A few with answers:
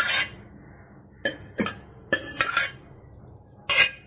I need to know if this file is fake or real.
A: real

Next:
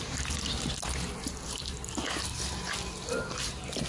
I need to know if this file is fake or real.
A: real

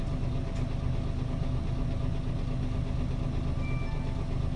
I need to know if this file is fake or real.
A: real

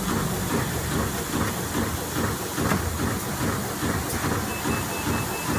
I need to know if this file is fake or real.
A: real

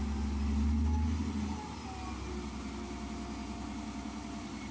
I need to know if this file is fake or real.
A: real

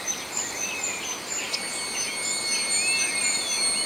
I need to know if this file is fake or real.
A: real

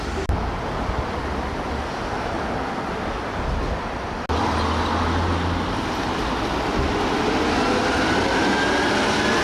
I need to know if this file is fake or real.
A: real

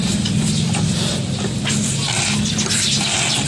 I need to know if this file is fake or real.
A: real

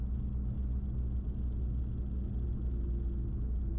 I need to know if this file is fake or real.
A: real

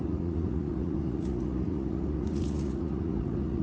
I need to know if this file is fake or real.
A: fake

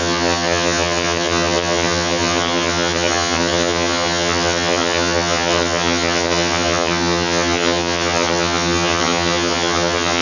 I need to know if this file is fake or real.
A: fake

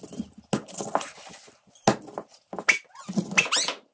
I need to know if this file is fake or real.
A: real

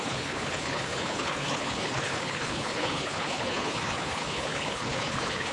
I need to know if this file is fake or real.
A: fake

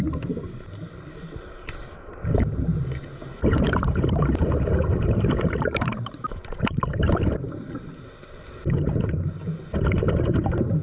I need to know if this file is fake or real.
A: fake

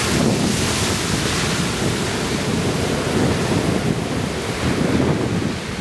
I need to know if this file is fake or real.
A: real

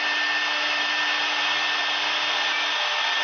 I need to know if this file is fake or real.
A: real